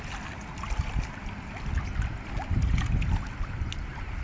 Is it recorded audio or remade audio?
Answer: recorded